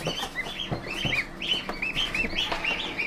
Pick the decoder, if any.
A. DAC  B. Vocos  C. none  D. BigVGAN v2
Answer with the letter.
C